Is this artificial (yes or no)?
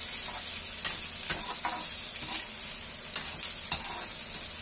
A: no